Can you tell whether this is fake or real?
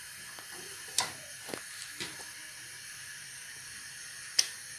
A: real